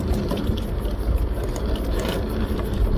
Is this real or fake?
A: fake